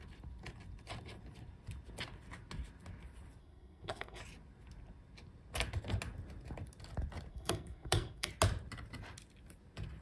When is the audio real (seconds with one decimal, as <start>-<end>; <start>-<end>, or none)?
0.0-3.4; 4.2-7.3; 8.3-10.0